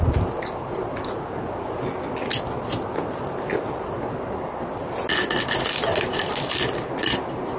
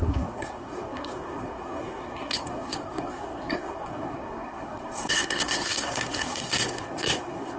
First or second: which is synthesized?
second